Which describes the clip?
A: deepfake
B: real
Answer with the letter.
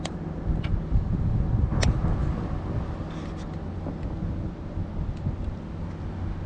B